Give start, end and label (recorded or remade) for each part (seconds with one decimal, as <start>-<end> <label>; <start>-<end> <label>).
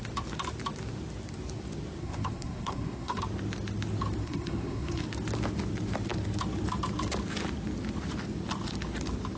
0.0-2.0 recorded; 2.0-3.2 remade; 3.2-4.2 recorded; 4.2-5.0 remade; 5.0-9.4 recorded